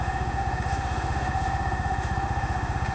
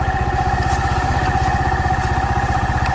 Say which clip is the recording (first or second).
second